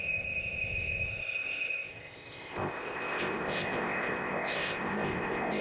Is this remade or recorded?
remade